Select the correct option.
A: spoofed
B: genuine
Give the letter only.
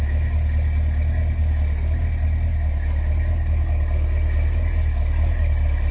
B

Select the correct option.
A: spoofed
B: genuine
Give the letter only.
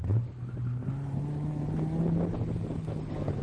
B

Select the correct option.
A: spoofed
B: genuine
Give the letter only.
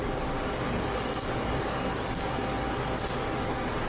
A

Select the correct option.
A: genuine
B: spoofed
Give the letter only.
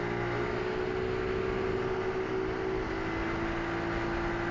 A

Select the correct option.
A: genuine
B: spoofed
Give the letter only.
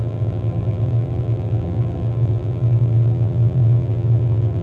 B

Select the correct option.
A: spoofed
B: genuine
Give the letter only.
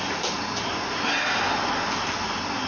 B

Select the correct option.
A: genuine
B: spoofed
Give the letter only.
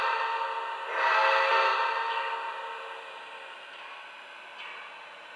A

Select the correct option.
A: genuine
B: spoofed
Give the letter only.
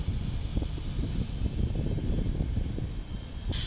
A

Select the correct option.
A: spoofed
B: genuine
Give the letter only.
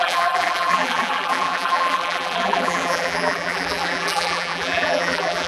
A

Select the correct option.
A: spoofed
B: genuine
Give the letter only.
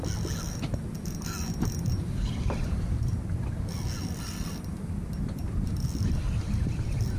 B